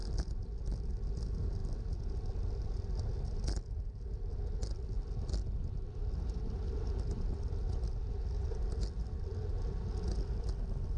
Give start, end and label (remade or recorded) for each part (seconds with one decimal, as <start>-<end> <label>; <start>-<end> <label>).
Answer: 0.0-11.0 recorded